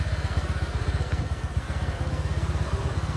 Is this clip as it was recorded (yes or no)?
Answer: no